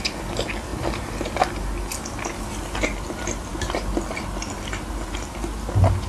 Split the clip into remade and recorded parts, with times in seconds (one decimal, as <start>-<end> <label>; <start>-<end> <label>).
0.0-0.7 recorded; 0.7-1.4 remade; 1.4-6.1 recorded